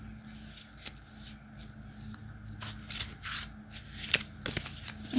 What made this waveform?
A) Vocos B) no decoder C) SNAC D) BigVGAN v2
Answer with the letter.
B